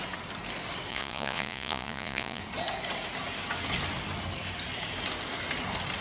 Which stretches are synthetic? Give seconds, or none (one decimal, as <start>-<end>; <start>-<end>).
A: 0.9-2.4